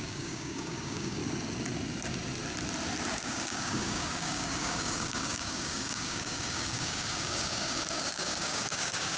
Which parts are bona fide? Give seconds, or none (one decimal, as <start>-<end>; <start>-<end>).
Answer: 1.2-3.1